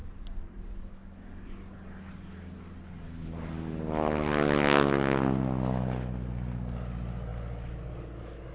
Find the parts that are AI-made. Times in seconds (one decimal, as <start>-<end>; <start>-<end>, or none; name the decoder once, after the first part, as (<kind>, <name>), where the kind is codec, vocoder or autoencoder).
0.0-0.7 (vocoder, BigVGAN v2)